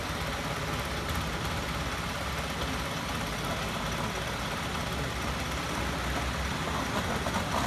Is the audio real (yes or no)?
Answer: yes